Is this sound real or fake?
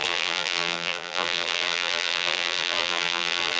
fake